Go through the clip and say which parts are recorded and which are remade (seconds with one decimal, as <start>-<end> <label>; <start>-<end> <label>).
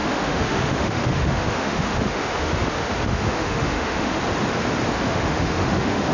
0.0-4.1 remade; 4.1-4.9 recorded; 4.9-6.1 remade